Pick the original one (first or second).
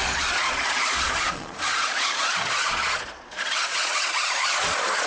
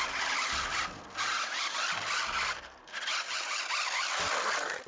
second